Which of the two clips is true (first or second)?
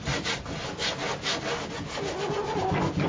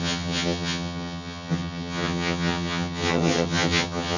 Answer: first